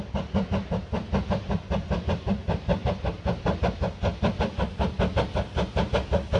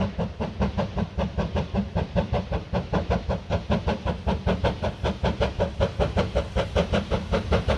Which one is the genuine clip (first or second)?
first